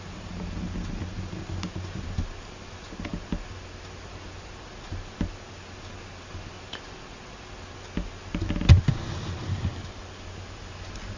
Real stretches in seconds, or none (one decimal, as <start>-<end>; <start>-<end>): 0.0-11.2